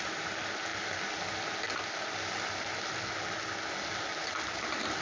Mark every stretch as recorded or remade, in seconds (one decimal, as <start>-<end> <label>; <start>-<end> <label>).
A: 0.0-5.0 recorded